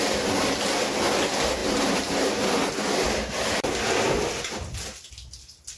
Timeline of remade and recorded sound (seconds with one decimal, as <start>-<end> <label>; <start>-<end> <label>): 0.0-1.6 recorded; 1.6-5.1 remade; 5.1-5.8 recorded